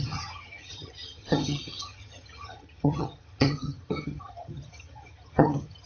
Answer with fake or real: fake